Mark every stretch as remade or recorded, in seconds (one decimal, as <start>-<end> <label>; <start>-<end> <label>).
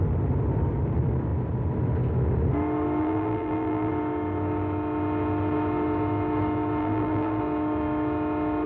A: 0.0-3.0 recorded; 3.0-3.9 remade; 3.9-6.8 recorded; 6.8-7.4 remade; 7.4-8.7 recorded